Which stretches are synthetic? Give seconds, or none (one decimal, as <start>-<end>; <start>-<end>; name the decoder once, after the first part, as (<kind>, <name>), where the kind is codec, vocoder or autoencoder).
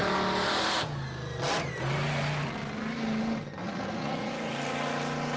3.6-4.3 (vocoder, Vocos)